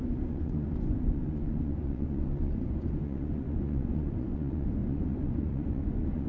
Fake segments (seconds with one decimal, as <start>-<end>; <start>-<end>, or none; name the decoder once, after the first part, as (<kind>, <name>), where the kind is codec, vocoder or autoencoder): 0.0-6.3 (vocoder, Vocos)